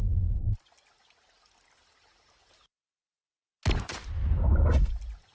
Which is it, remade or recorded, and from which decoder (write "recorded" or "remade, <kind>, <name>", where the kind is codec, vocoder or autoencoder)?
recorded